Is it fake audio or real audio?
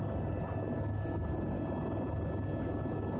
real